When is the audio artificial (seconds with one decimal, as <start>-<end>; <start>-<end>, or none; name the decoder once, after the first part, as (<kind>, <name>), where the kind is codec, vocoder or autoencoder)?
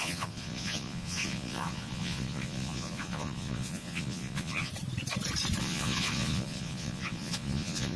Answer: 0.0-4.7 (vocoder, Vocos); 5.6-8.0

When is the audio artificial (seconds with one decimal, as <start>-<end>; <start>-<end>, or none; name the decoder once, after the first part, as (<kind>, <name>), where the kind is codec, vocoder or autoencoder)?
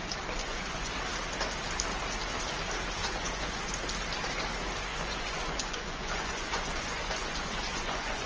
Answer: 0.4-0.9 (vocoder, Vocos); 3.0-3.7; 4.9-8.3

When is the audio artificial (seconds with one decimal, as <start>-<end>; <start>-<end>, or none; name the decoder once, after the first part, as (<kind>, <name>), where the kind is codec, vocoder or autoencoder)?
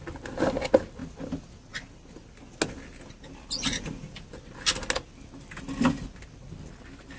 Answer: none